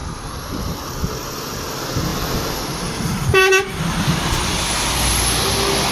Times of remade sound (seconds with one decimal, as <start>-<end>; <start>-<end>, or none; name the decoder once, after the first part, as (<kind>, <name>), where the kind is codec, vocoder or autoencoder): 0.0-0.9 (vocoder, BigVGAN v2); 2.1-5.1